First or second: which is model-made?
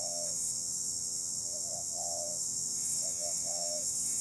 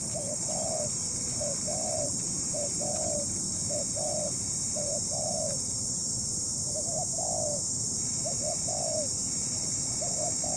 first